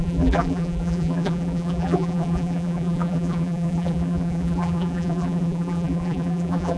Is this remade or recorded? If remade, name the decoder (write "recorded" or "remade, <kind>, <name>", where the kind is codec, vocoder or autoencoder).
remade, vocoder, BigVGAN v2